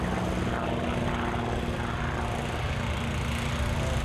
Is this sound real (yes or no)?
yes